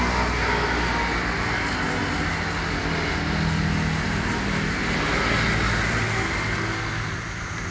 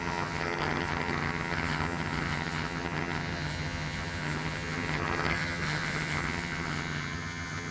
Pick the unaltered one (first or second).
first